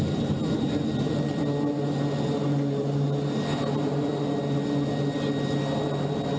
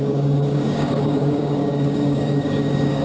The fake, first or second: second